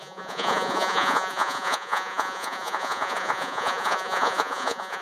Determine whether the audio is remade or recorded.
remade